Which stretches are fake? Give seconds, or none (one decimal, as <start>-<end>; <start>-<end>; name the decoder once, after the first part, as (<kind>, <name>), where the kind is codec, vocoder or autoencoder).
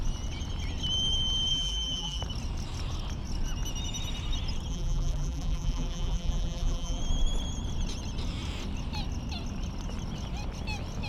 1.5-2.2 (vocoder, BigVGAN v2); 4.7-7.0